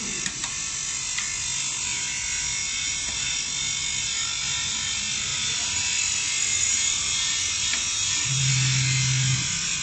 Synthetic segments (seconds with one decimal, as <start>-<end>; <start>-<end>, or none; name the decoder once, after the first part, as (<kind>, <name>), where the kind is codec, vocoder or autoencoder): 2.6-3.4 (vocoder, BigVGAN v2); 5.3-6.0; 6.5-8.5